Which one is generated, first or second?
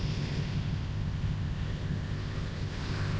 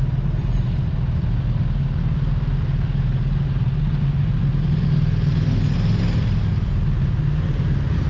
first